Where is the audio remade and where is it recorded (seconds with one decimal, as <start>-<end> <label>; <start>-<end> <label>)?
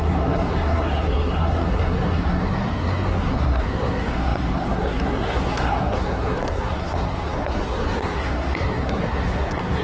0.0-9.8 remade